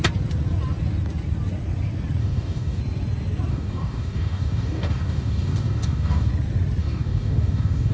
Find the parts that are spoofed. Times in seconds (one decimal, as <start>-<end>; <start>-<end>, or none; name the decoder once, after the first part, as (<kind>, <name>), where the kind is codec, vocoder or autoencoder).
2.2-2.8 (codec, DAC); 3.5-6.3; 6.8-7.9